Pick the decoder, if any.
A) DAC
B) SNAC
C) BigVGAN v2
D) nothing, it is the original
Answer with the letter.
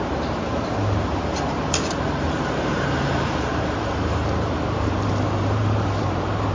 C